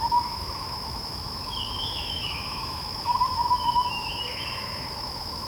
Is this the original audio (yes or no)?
no